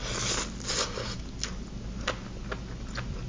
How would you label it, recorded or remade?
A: recorded